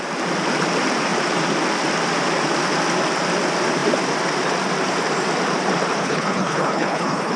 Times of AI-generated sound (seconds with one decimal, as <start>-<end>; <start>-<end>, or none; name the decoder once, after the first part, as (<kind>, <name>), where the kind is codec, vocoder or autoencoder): 6.0-7.4 (codec, HILCodec)